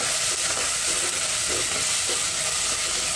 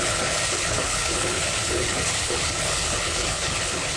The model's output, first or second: second